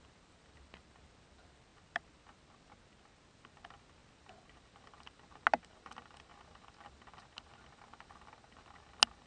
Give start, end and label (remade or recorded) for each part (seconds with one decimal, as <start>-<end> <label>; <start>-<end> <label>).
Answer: 0.0-9.3 recorded